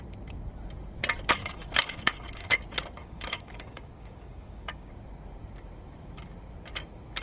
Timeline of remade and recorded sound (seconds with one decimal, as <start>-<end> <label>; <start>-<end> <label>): 0.0-1.4 recorded; 1.4-2.6 remade; 2.6-3.0 recorded; 3.0-4.9 remade; 4.9-7.2 recorded